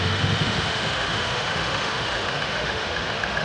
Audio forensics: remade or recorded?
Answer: remade